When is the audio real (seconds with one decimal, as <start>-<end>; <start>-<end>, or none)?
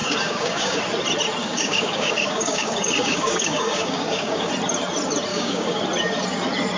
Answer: 0.8-1.4; 4.5-5.3; 5.8-6.8